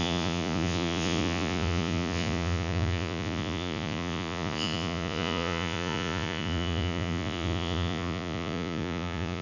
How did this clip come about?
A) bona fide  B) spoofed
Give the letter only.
B